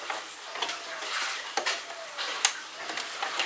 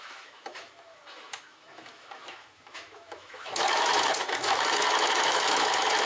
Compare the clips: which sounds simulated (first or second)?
second